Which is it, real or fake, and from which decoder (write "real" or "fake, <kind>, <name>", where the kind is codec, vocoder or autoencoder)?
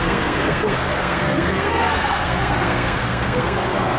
fake, codec, SNAC